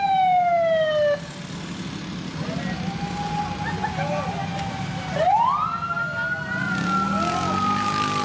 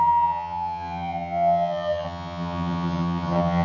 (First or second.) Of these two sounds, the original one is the first